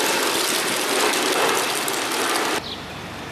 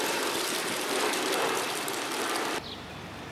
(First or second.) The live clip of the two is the first